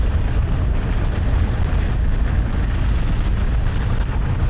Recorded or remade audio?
recorded